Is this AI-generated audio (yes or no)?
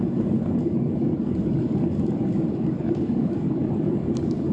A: yes